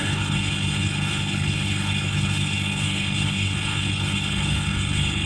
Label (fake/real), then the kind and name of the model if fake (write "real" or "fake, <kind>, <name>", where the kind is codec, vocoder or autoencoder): fake, codec, HILCodec